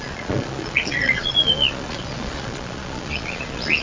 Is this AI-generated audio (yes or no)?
yes